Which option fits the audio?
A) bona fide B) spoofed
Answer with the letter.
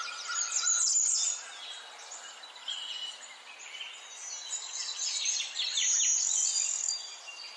A